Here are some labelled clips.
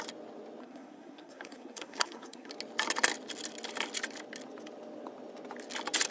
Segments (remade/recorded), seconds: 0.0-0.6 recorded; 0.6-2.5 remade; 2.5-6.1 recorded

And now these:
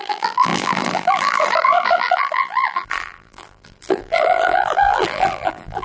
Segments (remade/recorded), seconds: 0.0-5.8 remade

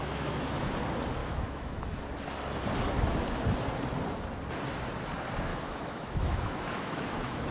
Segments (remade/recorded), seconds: 0.0-0.7 remade; 0.7-1.2 recorded; 1.2-2.0 remade; 2.0-5.5 recorded; 5.5-7.5 remade

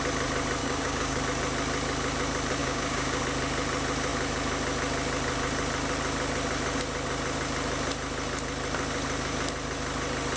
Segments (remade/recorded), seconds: 0.0-0.6 recorded; 0.6-1.2 remade; 1.2-2.6 recorded; 2.6-3.2 remade; 3.2-10.4 recorded

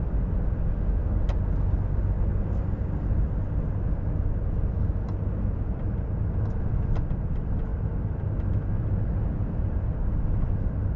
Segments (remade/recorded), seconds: 0.0-11.0 recorded

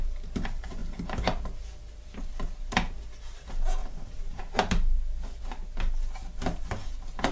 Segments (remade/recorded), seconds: 0.0-3.8 recorded; 3.8-4.4 remade; 4.4-7.3 recorded

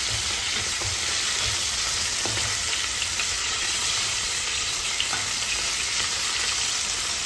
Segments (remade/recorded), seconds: 0.0-0.4 recorded; 0.4-0.9 remade; 0.9-3.4 recorded; 3.4-4.9 remade; 4.9-7.3 recorded

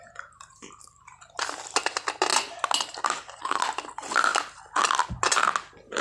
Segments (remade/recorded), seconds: 0.0-6.0 recorded